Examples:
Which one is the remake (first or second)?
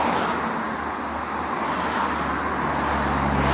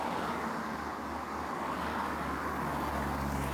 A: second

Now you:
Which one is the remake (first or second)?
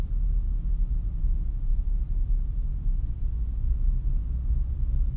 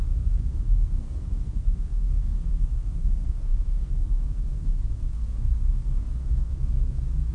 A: second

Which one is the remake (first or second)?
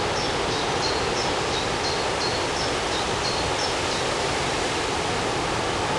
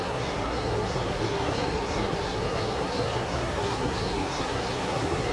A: second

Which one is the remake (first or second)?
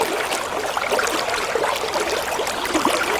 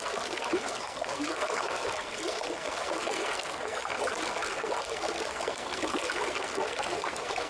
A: second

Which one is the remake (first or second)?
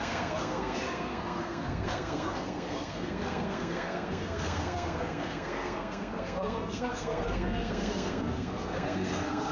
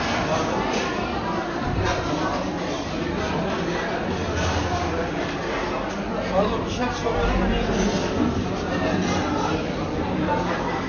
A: first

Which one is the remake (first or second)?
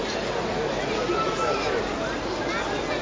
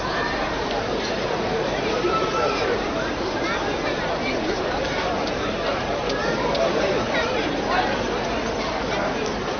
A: second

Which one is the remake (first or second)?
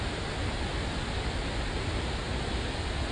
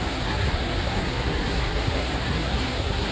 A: second